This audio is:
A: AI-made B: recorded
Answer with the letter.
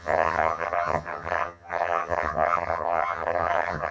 A